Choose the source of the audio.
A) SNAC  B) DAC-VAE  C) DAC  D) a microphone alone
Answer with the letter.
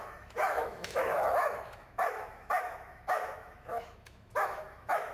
B